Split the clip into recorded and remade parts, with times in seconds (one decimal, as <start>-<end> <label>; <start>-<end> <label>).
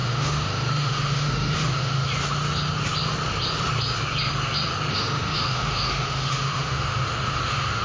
0.0-2.1 remade; 2.1-4.9 recorded; 4.9-7.8 remade